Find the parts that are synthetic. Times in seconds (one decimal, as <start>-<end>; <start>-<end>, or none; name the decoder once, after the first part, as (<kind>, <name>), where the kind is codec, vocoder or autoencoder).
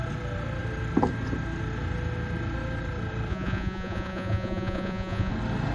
3.3-5.3 (vocoder, Vocos)